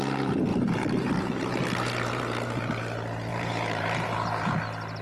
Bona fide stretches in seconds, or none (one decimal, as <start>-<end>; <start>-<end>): 0.0-0.5; 2.2-3.3; 4.0-5.0